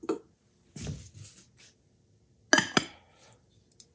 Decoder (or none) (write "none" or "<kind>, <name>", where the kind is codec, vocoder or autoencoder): none